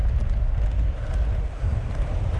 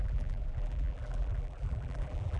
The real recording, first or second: first